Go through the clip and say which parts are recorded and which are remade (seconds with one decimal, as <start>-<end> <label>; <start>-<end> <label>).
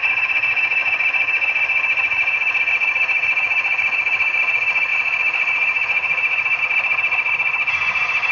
0.0-4.9 recorded; 4.9-6.6 remade; 6.6-8.3 recorded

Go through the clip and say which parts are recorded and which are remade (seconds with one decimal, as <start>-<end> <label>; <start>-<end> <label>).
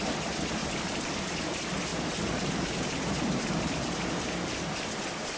0.0-0.6 recorded; 0.6-1.2 remade; 1.2-1.9 recorded; 1.9-4.9 remade; 4.9-5.4 recorded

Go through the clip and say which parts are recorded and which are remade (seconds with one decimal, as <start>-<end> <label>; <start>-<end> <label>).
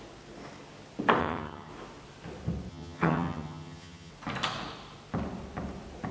0.0-1.2 recorded; 1.2-1.7 remade; 1.7-2.7 recorded; 2.7-4.1 remade; 4.1-6.1 recorded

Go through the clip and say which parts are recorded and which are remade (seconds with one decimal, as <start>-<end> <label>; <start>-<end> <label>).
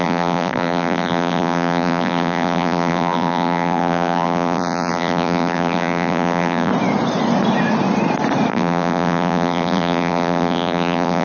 0.0-6.7 remade; 6.7-8.5 recorded; 8.5-11.2 remade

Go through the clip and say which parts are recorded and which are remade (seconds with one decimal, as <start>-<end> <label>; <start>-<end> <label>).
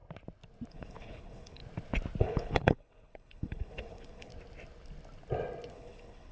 0.0-0.7 recorded; 0.7-1.6 remade; 1.6-2.2 recorded; 2.2-4.3 remade; 4.3-5.7 recorded; 5.7-6.3 remade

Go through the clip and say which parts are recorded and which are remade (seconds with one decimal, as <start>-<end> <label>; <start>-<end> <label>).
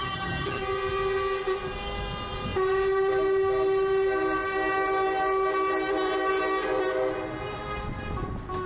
0.0-0.6 remade; 0.6-8.7 recorded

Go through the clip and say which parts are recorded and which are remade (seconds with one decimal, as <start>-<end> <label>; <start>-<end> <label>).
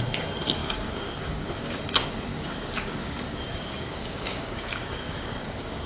0.0-0.6 recorded; 0.6-1.8 remade; 1.8-2.3 recorded; 2.3-5.9 remade